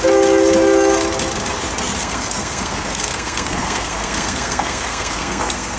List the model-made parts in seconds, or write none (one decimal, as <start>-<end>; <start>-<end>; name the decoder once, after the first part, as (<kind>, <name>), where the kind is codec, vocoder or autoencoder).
2.0-5.8 (codec, SNAC)